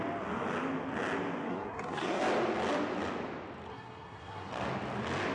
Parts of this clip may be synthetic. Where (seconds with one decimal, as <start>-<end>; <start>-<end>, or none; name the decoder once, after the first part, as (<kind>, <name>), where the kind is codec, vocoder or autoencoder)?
1.5-2.2 (codec, SNAC); 3.7-4.5